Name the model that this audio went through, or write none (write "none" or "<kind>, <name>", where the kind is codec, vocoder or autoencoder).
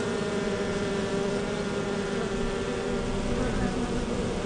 none